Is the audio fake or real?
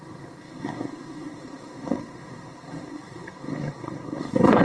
fake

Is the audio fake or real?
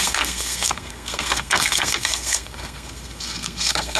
fake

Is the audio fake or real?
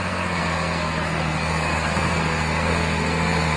fake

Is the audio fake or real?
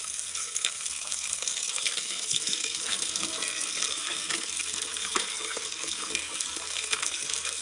fake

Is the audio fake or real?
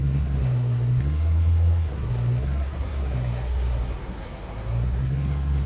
fake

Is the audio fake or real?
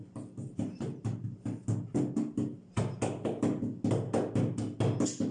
real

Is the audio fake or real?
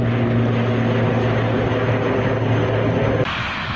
real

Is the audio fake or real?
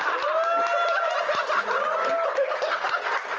real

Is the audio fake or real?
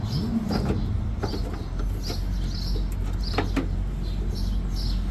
real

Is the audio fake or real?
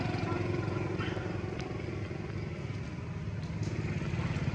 real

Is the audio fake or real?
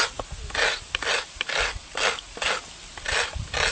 real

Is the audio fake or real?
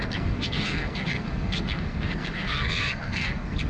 fake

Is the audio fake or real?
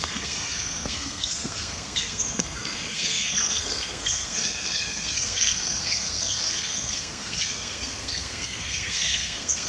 fake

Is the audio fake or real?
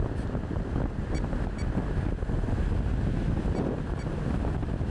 real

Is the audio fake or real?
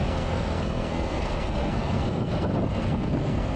fake